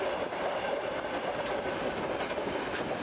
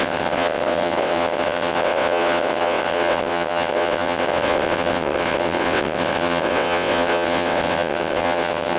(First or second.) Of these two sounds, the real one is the first